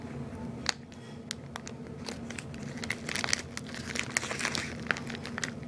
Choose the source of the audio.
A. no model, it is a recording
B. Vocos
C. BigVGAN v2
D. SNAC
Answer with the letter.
A